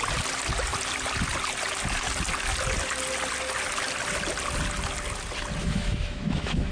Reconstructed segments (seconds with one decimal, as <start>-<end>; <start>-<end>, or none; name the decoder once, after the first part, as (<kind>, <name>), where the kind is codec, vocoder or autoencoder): 5.6-6.7 (autoencoder, DAC-VAE)